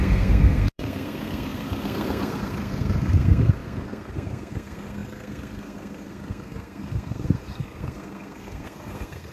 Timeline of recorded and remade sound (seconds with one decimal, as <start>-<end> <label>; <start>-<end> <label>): 0.0-9.3 remade

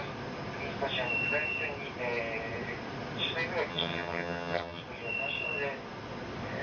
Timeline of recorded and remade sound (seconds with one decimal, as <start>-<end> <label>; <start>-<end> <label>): 0.0-3.7 recorded; 3.7-4.8 remade; 4.8-6.6 recorded

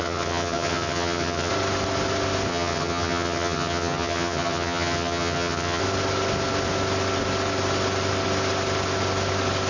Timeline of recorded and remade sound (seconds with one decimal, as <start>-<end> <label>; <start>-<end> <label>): 0.0-1.5 remade; 1.5-2.5 recorded; 2.5-5.8 remade; 5.8-9.7 recorded

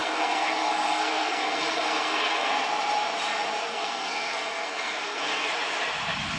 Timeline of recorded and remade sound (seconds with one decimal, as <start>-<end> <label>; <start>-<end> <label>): 0.0-2.5 remade; 2.5-3.7 recorded; 3.7-5.5 remade; 5.5-6.4 recorded

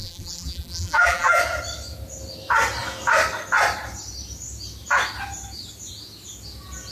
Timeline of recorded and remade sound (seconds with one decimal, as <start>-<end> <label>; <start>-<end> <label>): 0.0-1.4 remade; 1.4-6.9 recorded

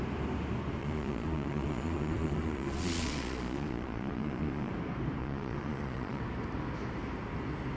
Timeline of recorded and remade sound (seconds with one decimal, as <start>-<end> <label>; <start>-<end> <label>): 0.0-0.8 recorded; 0.8-4.7 remade; 4.7-5.2 recorded; 5.2-6.2 remade; 6.2-7.8 recorded

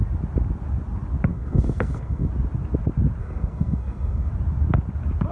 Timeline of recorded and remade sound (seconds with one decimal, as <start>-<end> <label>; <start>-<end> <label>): 0.0-1.3 recorded; 1.3-2.3 remade; 2.3-3.2 recorded; 3.2-4.3 remade; 4.3-5.3 recorded

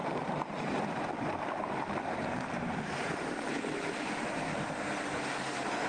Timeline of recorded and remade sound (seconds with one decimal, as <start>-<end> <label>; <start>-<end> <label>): 0.0-3.5 remade; 3.5-5.9 recorded